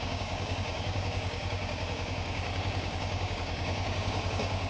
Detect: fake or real fake